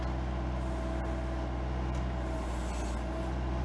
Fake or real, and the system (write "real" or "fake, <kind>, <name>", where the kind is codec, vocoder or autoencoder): real